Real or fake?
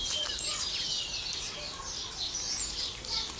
real